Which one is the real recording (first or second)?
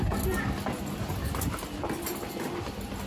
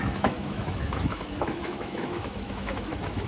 first